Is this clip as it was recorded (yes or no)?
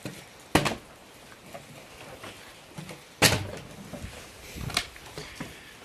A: yes